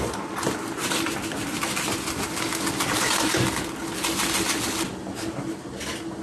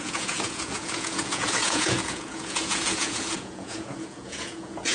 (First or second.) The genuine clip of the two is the first